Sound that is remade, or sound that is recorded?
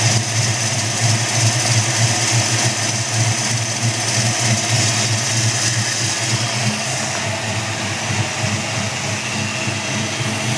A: recorded